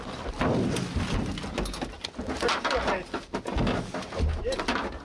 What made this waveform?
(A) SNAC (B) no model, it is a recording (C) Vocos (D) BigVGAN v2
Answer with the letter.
B